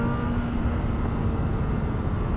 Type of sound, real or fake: real